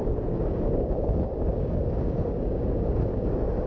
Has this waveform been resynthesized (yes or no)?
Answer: yes